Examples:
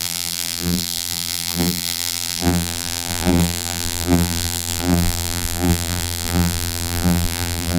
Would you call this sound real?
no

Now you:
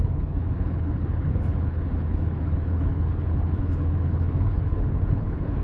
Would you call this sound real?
no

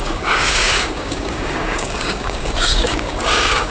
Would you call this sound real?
no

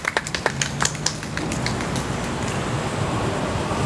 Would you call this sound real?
yes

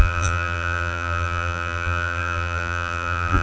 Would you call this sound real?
no